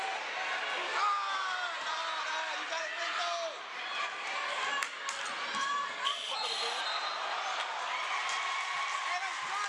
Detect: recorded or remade recorded